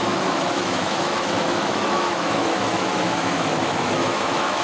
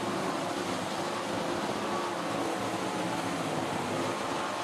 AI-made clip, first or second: first